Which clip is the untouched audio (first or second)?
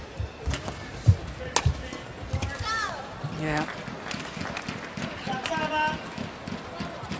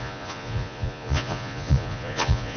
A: first